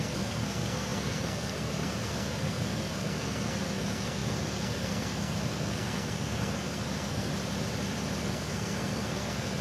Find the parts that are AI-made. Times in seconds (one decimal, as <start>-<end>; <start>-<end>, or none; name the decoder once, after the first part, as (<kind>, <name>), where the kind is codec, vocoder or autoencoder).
0.0-7.3 (codec, SNAC); 8.2-9.6